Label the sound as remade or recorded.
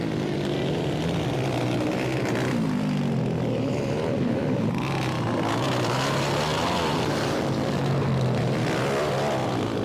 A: recorded